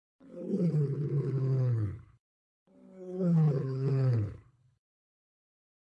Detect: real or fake fake